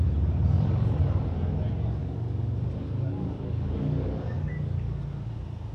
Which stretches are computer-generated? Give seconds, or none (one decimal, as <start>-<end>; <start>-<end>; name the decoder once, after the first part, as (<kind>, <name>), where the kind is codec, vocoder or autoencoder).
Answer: 2.0-5.0 (codec, DAC)